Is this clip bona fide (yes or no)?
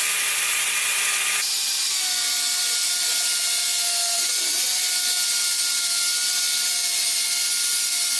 yes